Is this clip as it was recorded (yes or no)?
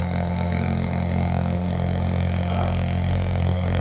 no